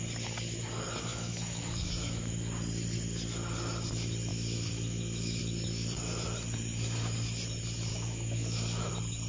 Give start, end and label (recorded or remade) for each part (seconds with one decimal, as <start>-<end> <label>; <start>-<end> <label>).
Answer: 0.0-1.1 recorded; 1.1-2.3 remade; 2.3-4.3 recorded; 4.3-5.4 remade; 5.4-7.9 recorded; 7.9-8.9 remade; 8.9-9.3 recorded